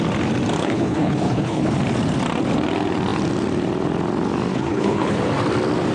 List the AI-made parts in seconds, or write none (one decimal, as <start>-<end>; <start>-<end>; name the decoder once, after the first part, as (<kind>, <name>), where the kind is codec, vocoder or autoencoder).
0.6-1.7 (codec, HILCodec); 4.5-5.2